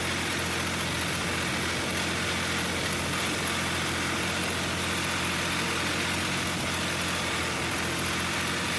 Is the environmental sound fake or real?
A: real